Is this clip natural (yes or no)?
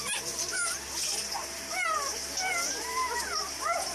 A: yes